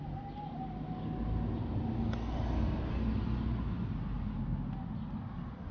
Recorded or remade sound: recorded